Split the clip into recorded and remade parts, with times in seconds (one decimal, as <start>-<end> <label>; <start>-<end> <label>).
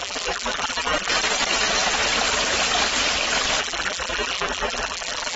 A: 0.0-1.1 remade; 1.1-3.6 recorded; 3.6-5.4 remade